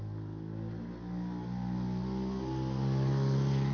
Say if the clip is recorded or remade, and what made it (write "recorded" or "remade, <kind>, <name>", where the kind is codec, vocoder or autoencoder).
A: recorded